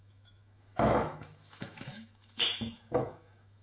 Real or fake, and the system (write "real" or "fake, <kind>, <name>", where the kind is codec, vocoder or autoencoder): fake, autoencoder, DAC-VAE